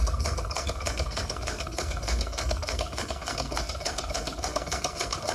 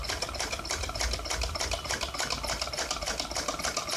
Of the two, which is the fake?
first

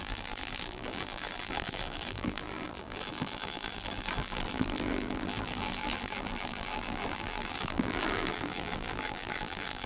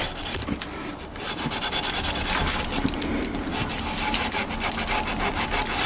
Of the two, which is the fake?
first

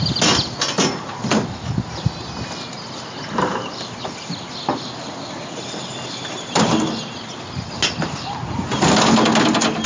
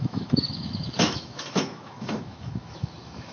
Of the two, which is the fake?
second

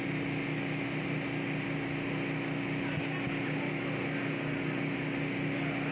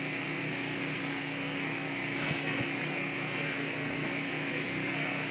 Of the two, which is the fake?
second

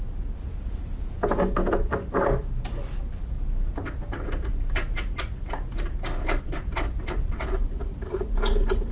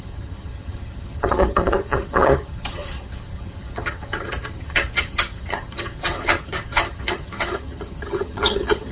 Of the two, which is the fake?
second